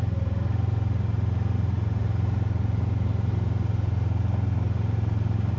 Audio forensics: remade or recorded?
recorded